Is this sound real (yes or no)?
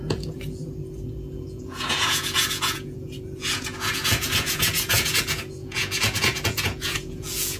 no